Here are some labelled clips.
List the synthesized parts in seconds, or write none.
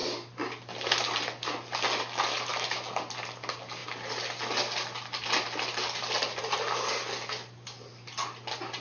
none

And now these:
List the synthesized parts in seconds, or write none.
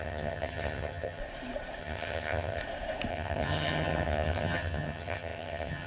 0.0-1.2 (vocoder, HiFi-GAN); 1.8-2.6; 3.1-5.9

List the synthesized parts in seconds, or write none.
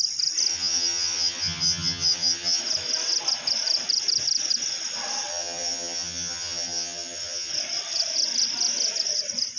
0.5-2.6 (vocoder, HiFi-GAN); 5.3-7.5